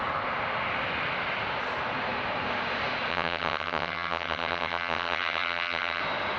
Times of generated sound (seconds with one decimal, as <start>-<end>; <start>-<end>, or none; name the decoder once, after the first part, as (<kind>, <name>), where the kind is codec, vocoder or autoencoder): 3.1-6.0 (vocoder, HiFi-GAN)